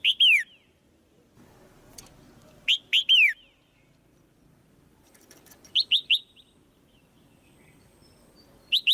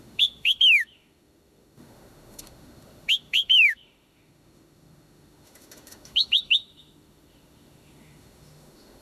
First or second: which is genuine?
first